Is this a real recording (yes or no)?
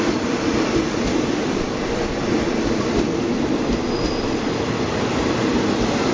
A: yes